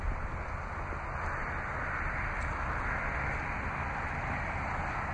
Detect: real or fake real